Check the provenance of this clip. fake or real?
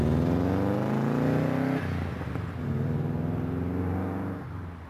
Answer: real